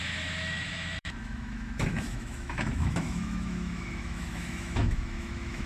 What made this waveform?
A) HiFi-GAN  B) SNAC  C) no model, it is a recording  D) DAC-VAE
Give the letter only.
D